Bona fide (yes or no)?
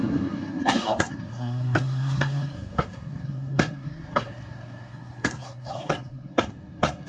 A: no